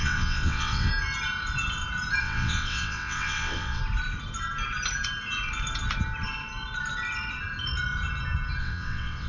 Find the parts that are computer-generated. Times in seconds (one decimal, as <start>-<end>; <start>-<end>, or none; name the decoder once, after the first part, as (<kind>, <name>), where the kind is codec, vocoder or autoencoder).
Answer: 0.0-0.9 (vocoder, WaveNeXt); 2.2-3.8; 8.6-9.3